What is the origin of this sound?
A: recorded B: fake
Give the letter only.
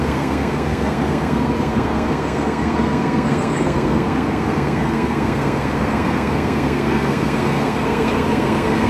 B